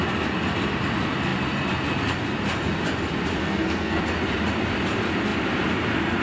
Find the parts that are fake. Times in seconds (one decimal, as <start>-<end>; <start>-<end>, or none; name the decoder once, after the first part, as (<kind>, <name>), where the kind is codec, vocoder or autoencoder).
3.4-4.0 (codec, SNAC)